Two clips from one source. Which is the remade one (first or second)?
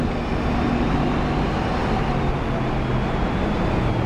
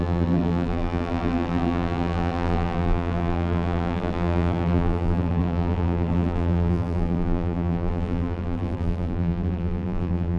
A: second